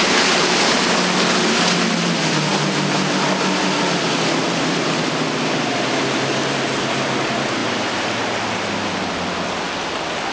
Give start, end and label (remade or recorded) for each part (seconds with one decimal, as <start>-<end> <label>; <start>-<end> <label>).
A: 0.0-10.3 recorded